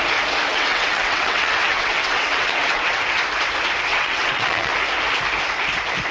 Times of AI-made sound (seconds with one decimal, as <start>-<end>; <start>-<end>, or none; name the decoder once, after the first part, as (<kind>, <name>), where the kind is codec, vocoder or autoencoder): 0.5-3.0 (vocoder, WaveNeXt); 3.9-4.7